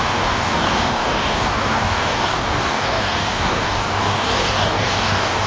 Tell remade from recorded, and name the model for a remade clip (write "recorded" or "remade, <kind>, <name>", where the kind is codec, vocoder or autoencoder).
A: remade, codec, DAC